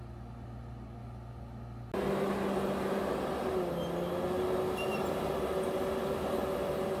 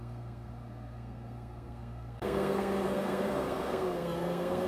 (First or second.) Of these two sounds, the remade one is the second